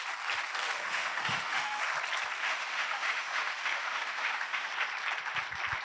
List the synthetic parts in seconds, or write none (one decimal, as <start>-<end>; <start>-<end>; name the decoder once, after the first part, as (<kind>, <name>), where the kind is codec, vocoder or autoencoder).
0.6-1.8 (autoencoder, DAC-VAE); 2.4-4.7

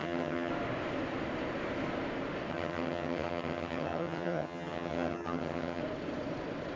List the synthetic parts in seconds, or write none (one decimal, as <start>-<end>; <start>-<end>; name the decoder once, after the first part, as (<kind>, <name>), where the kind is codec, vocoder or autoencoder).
0.0-0.5 (vocoder, HiFi-GAN); 2.5-5.8

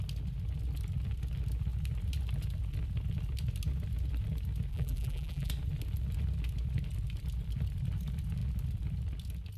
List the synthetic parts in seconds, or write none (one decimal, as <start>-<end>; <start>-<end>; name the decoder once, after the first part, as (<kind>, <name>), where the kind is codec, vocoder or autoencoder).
4.7-5.5 (vocoder, BigVGAN v2)

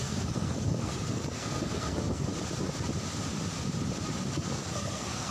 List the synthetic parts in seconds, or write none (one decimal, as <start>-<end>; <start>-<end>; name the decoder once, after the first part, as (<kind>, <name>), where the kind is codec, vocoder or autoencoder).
0.0-2.3 (codec, SNAC); 4.3-5.3

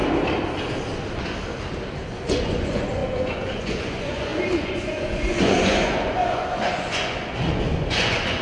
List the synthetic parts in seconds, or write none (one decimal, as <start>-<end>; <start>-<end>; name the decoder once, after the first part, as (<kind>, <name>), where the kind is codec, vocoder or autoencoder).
2.2-8.4 (vocoder, Vocos)